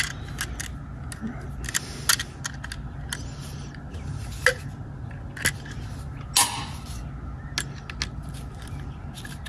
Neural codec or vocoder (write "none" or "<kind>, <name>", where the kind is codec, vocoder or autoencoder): none